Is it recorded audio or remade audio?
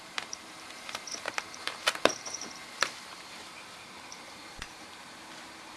remade